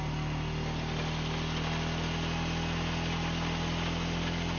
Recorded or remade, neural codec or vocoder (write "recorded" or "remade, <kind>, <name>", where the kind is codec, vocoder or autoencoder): recorded